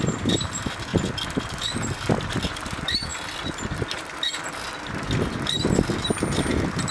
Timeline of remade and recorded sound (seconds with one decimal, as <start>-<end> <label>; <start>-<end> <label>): 0.0-6.9 recorded